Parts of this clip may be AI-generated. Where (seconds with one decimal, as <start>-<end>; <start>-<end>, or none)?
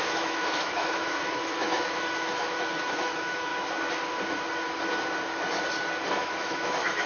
0.0-3.5; 6.1-7.1